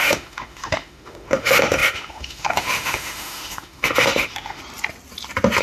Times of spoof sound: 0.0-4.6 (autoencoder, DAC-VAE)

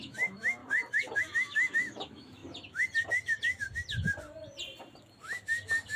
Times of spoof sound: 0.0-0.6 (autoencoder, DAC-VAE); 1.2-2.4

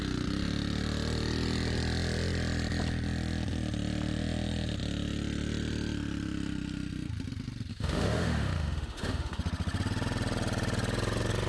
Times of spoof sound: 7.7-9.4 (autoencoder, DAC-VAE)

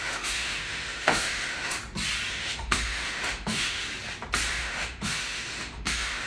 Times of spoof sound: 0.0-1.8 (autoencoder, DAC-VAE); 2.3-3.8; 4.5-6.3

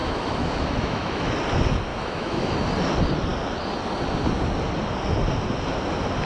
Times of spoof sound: 0.0-1.3 (autoencoder, DAC-VAE); 1.9-2.5